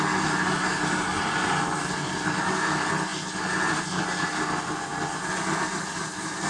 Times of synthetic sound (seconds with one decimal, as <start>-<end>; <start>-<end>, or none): none